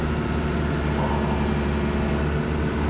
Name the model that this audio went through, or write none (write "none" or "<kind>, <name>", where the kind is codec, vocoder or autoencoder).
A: none